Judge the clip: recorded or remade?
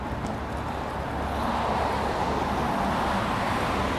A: recorded